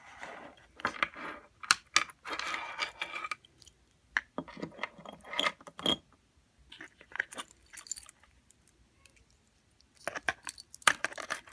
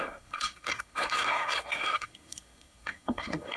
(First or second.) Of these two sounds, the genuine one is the first